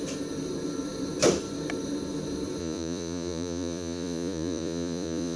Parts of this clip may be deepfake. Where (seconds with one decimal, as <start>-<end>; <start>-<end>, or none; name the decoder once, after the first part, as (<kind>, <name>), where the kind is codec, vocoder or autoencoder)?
2.6-5.4 (vocoder, Vocos)

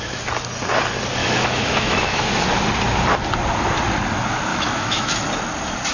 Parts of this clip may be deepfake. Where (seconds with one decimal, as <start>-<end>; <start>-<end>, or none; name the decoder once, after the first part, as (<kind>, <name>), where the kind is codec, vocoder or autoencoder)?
1.2-2.4 (autoencoder, DAC-VAE); 4.5-5.1

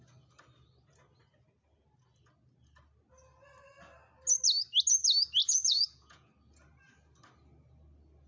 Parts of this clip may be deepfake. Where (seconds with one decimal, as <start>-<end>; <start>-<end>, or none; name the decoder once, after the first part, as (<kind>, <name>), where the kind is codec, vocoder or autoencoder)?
5.4-6.3 (vocoder, Vocos)

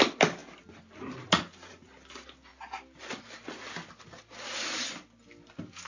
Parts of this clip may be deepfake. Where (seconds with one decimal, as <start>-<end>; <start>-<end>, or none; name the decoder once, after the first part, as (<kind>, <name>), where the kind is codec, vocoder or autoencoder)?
none

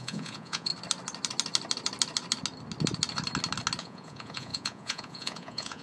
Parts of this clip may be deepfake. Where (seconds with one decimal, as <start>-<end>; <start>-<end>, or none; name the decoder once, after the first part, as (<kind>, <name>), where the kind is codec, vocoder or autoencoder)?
0.0-0.7 (vocoder, Vocos); 3.8-5.8

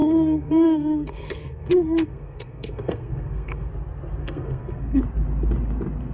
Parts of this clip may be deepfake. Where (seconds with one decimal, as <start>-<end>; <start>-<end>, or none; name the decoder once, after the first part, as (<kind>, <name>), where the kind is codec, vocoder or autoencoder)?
0.0-3.7 (codec, SNAC); 4.2-5.0

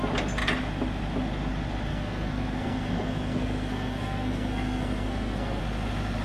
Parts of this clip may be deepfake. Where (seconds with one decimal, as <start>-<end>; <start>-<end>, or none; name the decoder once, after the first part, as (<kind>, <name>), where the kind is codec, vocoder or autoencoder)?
1.9-5.6 (codec, SNAC)